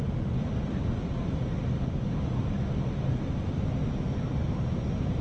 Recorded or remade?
recorded